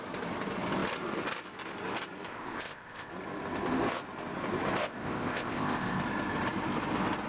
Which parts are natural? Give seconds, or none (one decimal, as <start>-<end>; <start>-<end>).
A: 0.0-2.3; 3.1-4.8; 6.0-7.3